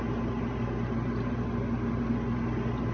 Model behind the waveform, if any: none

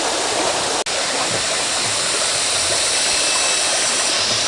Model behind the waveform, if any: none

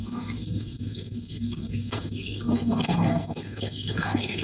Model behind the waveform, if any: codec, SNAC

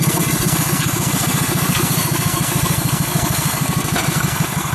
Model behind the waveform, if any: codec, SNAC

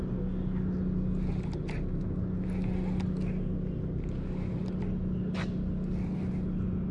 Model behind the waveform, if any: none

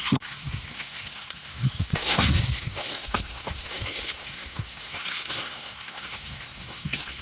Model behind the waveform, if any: codec, SNAC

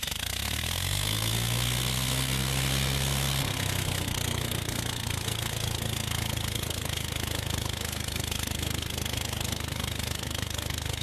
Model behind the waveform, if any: codec, SNAC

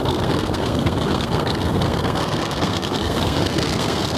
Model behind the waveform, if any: codec, SNAC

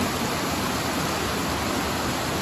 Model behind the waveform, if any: none